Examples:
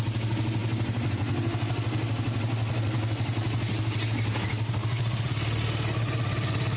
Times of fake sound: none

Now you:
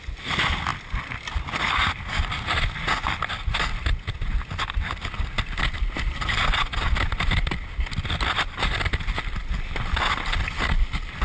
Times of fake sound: none

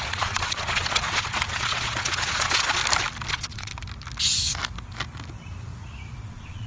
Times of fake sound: 0.0-2.8; 3.3-3.7; 6.3-6.7

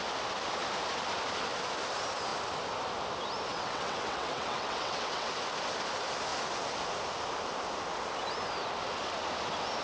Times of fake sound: 3.5-5.3

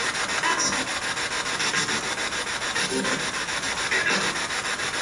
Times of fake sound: none

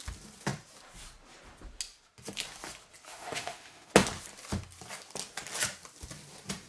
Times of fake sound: 3.1-3.9

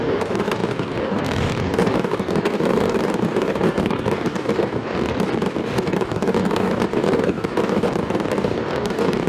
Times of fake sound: 0.0-5.1; 5.6-9.3